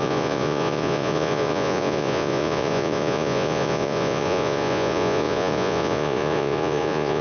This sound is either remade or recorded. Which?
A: remade